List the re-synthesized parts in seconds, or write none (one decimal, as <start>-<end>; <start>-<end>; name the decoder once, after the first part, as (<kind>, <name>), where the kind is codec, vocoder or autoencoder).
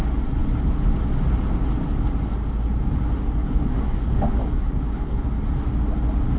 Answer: 3.4-5.2 (codec, DAC)